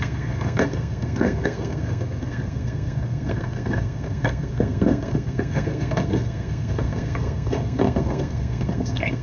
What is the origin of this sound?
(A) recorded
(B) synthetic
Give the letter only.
B